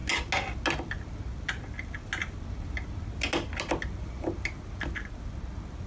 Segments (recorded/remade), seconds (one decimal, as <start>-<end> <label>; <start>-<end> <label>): 0.0-5.9 recorded